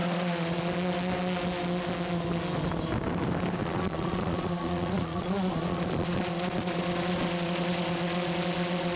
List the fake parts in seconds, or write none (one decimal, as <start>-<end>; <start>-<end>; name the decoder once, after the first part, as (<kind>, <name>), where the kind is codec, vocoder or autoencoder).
0.0-0.7 (vocoder, Vocos); 3.6-9.0